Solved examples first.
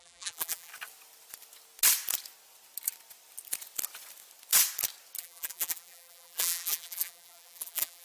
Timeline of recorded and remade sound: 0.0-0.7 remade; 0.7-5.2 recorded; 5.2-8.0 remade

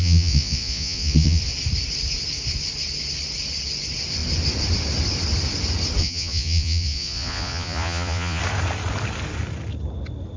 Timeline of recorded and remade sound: 0.0-1.4 remade; 1.4-6.0 recorded; 6.0-8.4 remade; 8.4-10.4 recorded

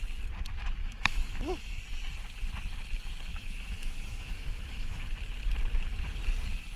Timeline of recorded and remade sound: 0.0-0.8 recorded; 0.8-1.8 remade; 1.8-3.3 recorded; 3.3-5.0 remade; 5.0-6.8 recorded